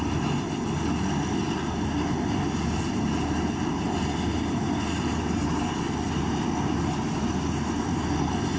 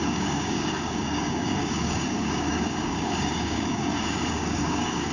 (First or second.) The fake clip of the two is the second